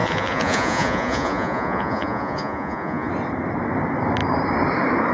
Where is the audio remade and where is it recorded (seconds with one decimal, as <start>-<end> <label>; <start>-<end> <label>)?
0.0-3.1 remade; 3.1-5.1 recorded